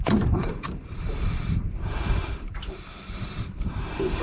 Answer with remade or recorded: remade